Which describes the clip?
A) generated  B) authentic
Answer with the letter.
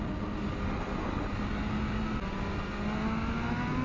B